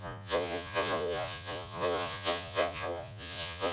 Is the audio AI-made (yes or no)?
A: yes